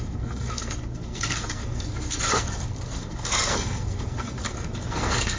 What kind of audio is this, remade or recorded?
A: remade